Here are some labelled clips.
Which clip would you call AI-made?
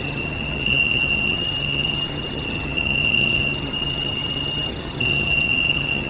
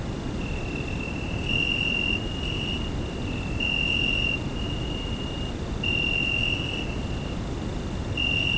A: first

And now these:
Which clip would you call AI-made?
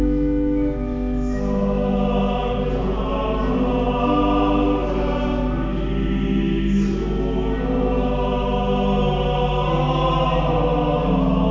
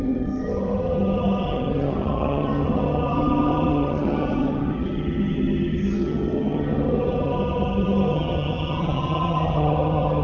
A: second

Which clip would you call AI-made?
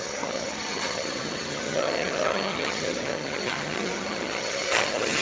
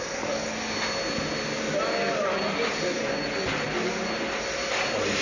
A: first